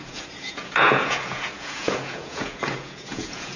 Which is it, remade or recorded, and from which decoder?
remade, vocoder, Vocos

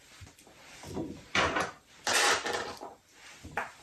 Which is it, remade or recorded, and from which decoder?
remade, vocoder, BigVGAN v2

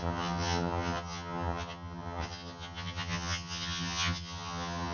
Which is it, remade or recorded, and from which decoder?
remade, vocoder, HiFi-GAN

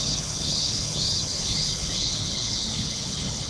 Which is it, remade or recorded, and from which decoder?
remade, codec, HILCodec